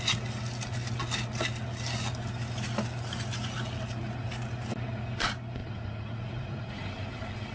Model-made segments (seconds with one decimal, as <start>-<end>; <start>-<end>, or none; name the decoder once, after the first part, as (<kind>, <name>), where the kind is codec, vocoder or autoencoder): 5.6-6.9 (vocoder, Vocos)